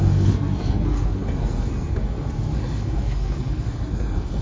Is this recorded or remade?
remade